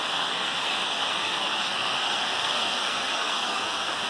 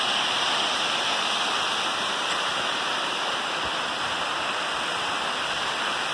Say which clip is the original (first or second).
second